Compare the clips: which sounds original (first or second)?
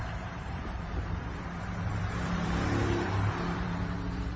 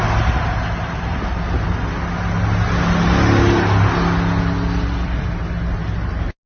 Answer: second